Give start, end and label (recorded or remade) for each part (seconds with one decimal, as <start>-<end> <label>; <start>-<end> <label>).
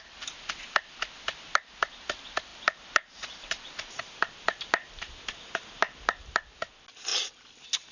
0.0-7.9 recorded